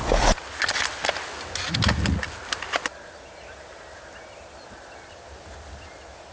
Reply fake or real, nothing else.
real